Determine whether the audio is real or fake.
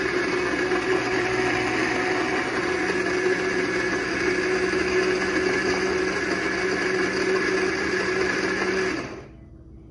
real